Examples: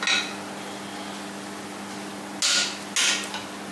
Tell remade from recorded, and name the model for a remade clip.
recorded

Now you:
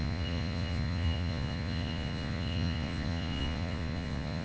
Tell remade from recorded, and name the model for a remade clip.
remade, vocoder, Vocos